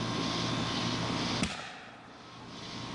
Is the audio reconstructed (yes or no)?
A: no